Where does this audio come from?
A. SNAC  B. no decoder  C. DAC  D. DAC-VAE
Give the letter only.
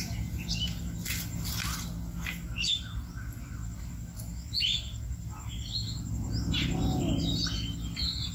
B